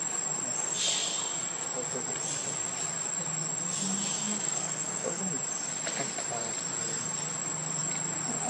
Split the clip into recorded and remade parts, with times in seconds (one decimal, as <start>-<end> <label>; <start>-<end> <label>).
0.0-4.2 recorded; 4.2-5.2 remade; 5.2-8.5 recorded